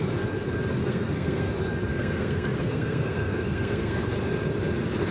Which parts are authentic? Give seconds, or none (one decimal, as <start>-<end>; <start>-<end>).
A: 0.0-0.8; 1.5-1.9; 4.0-5.1